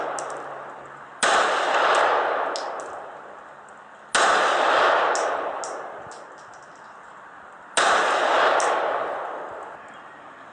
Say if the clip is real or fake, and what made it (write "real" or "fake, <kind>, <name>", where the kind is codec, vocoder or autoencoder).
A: real